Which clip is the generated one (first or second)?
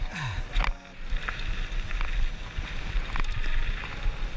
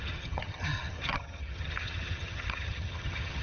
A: second